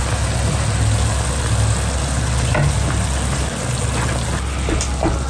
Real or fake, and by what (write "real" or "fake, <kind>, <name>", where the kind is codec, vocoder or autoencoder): real